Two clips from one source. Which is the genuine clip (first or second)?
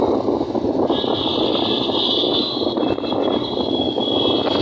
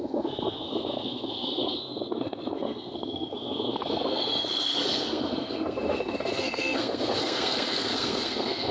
first